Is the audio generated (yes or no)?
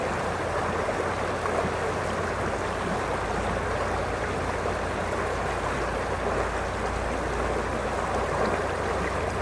no